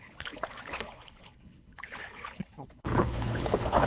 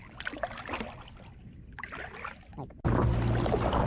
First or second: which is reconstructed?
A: first